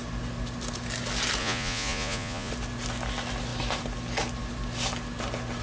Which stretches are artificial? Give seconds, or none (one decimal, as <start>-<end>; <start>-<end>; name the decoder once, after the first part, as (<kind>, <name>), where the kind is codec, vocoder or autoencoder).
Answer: 1.4-2.5 (vocoder, Vocos)